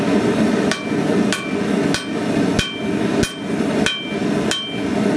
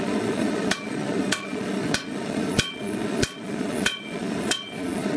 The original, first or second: first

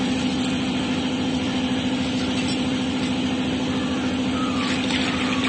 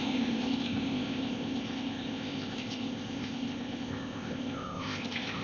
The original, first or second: first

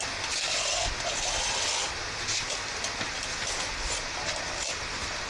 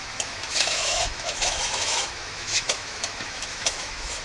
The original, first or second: first